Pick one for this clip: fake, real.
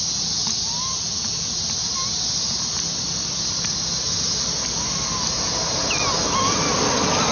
real